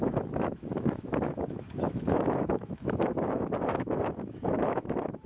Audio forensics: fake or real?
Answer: fake